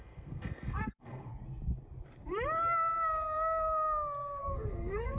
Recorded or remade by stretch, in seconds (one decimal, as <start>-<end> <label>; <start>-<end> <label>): 0.0-1.3 remade; 1.3-4.4 recorded; 4.4-5.2 remade